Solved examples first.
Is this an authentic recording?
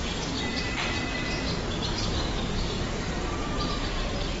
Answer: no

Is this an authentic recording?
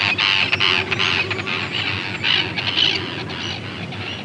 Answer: yes